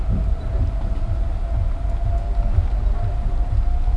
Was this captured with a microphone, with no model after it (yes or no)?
yes